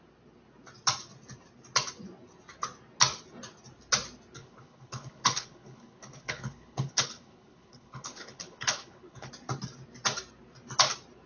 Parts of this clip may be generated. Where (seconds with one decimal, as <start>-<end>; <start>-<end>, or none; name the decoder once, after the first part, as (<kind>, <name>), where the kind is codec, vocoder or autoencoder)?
4.4-9.3 (codec, HILCodec)